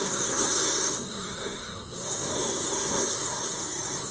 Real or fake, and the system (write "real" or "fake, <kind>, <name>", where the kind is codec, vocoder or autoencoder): fake, codec, SNAC